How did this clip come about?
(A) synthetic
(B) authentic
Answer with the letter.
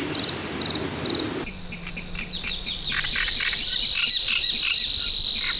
B